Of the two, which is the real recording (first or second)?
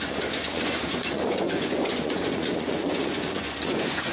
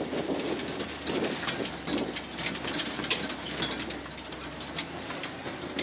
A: second